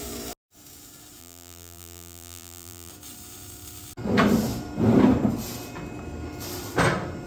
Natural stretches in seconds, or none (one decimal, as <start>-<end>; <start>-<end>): 0.0-1.2; 2.9-7.3